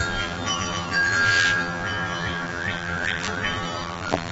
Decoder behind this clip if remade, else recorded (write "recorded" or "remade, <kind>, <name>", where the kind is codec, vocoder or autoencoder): remade, vocoder, BigVGAN v2